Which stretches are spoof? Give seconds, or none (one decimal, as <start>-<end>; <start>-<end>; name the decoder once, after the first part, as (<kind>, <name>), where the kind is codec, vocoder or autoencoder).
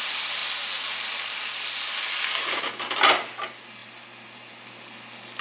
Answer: none